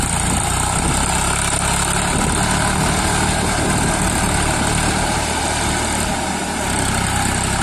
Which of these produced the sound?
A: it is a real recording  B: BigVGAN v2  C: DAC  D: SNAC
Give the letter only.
A